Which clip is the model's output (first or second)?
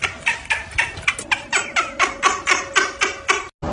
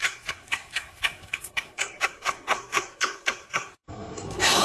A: second